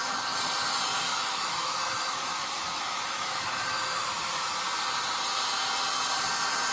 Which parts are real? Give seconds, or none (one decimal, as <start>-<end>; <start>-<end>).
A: 0.0-1.1; 4.6-6.7